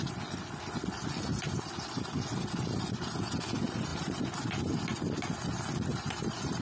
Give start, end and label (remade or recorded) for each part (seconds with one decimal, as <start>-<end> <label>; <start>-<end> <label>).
0.0-5.9 recorded; 5.9-6.6 remade